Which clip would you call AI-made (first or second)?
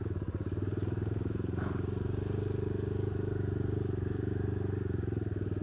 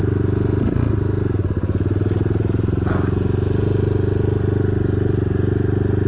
first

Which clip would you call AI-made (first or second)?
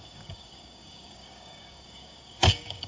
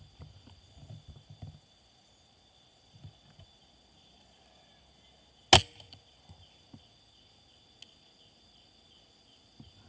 first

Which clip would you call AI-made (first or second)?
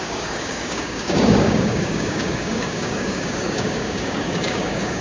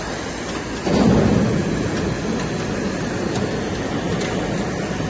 first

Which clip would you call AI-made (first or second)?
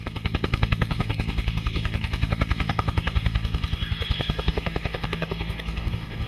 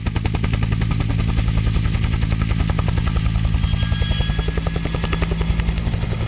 first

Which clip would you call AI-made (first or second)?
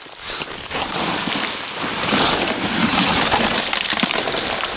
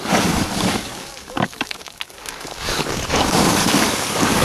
second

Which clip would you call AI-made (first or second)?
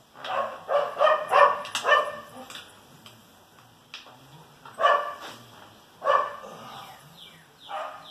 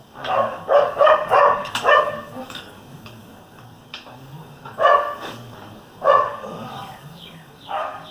second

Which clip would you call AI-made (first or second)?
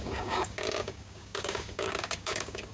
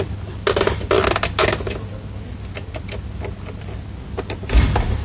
first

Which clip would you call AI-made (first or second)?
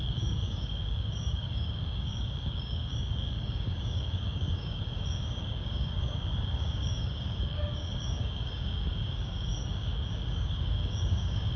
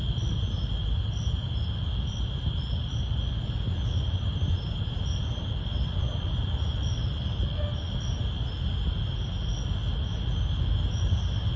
first